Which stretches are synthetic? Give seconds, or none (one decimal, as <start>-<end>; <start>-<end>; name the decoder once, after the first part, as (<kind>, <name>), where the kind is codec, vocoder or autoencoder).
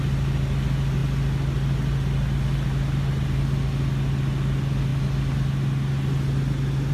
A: none